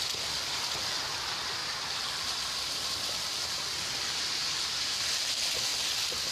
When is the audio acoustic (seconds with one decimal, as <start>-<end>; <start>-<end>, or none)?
0.0-6.3